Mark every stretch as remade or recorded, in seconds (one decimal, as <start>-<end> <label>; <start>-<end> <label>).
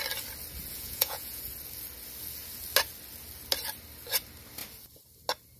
0.0-0.7 recorded; 0.7-1.4 remade; 1.4-5.6 recorded